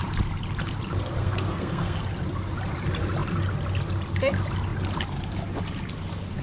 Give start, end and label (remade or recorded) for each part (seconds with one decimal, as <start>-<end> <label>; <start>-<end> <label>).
0.0-1.2 recorded; 1.2-2.0 remade; 2.0-6.4 recorded